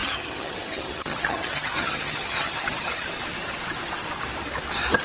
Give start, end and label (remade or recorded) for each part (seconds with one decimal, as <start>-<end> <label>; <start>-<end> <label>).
0.0-3.0 remade; 3.0-5.0 recorded